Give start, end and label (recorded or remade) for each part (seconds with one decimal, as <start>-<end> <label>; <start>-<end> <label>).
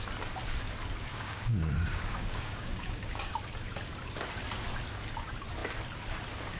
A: 0.0-1.1 recorded; 1.1-3.3 remade; 3.3-6.6 recorded